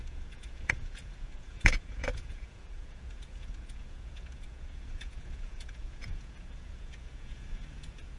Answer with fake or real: fake